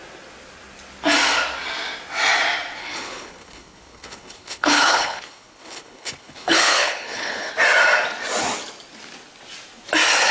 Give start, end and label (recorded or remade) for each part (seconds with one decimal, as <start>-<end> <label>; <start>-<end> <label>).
0.0-2.8 recorded; 2.8-7.5 remade; 7.5-10.3 recorded